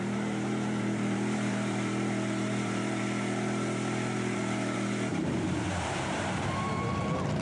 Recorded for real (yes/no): no